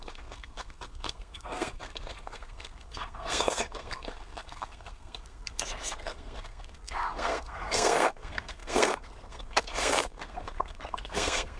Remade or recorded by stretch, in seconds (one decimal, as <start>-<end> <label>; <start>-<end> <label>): 0.0-11.6 remade

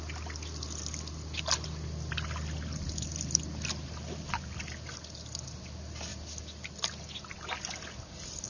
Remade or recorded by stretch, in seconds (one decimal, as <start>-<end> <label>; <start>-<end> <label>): 0.0-8.5 recorded

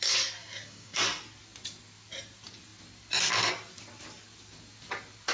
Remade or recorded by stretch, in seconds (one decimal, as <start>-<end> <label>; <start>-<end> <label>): 0.0-0.4 recorded; 0.4-1.0 remade; 1.0-5.3 recorded

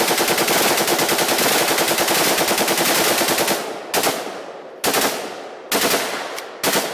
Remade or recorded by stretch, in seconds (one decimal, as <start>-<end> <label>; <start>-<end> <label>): 0.0-6.9 recorded

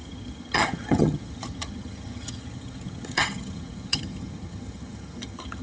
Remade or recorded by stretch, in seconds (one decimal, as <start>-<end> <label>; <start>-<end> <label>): 0.0-5.6 remade